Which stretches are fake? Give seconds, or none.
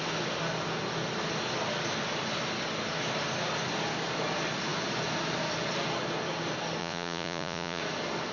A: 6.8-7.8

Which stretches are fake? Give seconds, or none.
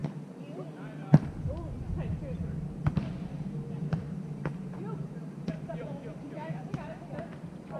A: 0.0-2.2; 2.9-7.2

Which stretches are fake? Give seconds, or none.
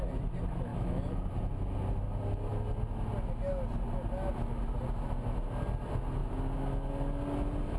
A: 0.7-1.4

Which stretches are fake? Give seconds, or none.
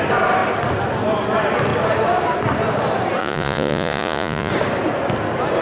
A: 3.2-4.5